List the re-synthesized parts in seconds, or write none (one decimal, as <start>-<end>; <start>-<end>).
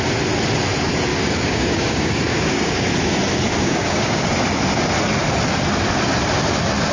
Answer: 1.1-2.9; 3.5-4.3